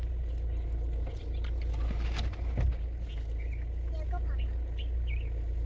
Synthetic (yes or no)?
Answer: no